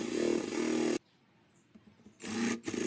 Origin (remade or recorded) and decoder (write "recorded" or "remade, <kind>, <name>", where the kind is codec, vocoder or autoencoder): recorded